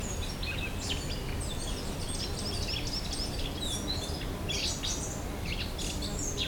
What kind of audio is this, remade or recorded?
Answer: recorded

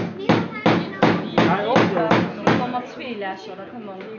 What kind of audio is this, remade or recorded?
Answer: recorded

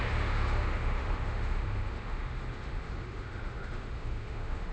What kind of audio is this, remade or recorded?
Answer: remade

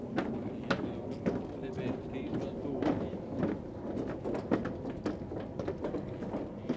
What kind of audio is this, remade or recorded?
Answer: recorded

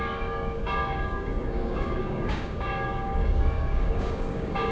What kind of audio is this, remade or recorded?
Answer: remade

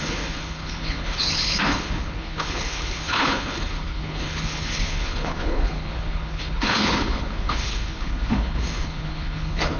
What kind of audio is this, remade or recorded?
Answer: remade